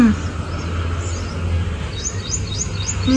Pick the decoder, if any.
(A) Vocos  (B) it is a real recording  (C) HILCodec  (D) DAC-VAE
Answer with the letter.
B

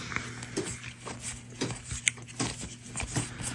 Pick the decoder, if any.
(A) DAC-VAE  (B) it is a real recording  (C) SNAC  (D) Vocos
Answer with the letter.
B